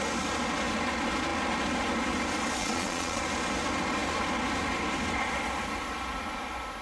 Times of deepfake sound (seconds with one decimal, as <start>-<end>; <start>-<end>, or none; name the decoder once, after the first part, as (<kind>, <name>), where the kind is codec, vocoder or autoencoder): 2.6-3.2 (vocoder, Vocos)